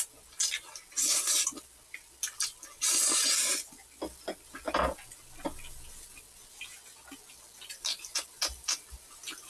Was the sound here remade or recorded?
recorded